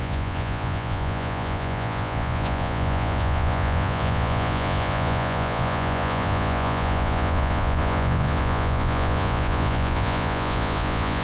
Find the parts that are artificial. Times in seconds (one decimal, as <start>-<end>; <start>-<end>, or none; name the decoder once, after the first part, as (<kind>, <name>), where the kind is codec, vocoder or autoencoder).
0.0-11.2 (vocoder, Vocos)